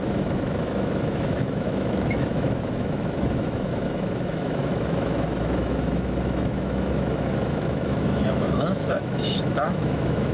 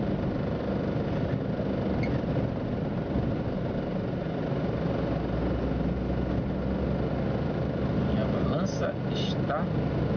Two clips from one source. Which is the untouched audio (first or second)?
second